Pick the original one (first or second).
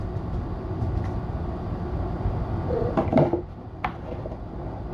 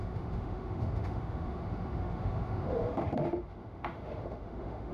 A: first